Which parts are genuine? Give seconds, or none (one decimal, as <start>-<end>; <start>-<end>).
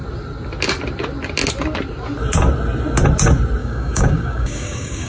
0.0-3.6